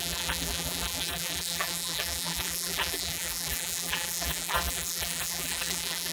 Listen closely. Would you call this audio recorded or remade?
remade